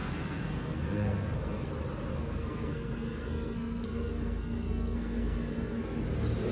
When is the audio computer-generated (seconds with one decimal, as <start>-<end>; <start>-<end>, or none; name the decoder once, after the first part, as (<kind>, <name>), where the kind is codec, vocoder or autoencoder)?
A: 0.0-1.7 (codec, SNAC); 2.1-6.0